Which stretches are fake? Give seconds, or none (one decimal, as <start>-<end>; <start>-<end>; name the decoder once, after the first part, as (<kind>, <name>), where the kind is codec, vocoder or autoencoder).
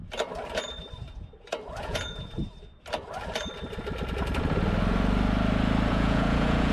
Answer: 1.8-2.4 (vocoder, Vocos); 5.9-6.7